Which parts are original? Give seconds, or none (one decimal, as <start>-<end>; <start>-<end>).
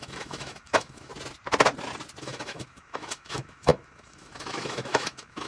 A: 1.1-2.2